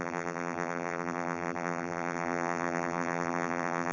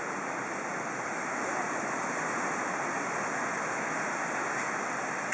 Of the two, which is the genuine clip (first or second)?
second